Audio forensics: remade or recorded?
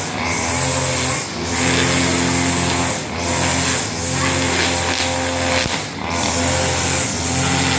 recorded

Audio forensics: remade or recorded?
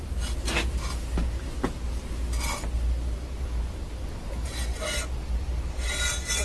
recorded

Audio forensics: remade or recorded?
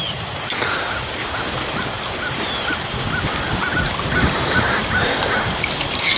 recorded